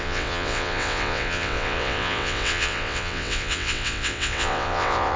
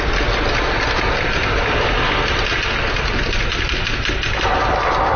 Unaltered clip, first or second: second